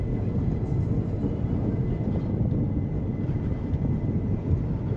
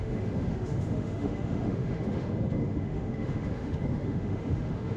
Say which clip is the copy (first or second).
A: second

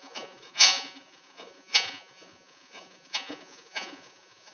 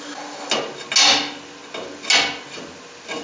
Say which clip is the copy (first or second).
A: first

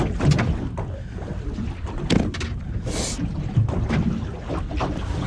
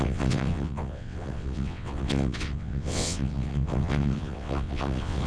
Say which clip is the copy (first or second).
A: second